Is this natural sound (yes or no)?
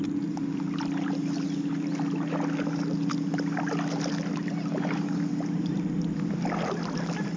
yes